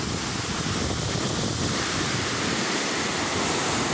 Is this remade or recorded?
remade